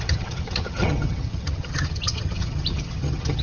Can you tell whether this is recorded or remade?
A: remade